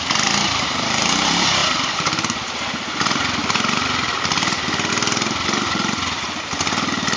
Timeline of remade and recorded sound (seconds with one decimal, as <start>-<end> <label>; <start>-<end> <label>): 0.0-7.2 recorded